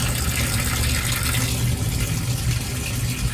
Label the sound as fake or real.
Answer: real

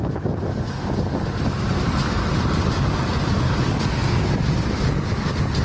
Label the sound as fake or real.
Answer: real